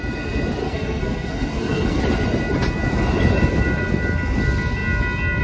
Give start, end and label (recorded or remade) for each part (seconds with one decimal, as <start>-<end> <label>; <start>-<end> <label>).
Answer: 0.0-0.6 recorded; 0.6-2.0 remade; 2.0-5.4 recorded